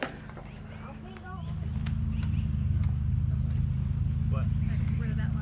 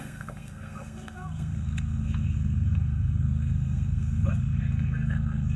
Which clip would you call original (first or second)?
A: first